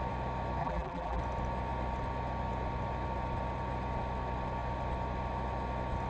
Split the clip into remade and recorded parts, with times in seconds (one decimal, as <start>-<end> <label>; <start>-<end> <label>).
0.0-0.6 recorded; 0.6-1.2 remade; 1.2-6.1 recorded